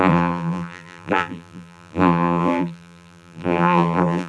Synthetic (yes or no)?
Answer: yes